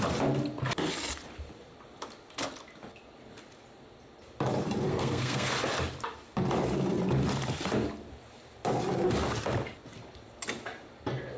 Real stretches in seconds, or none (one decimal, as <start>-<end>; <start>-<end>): 0.0-4.9; 5.5-11.4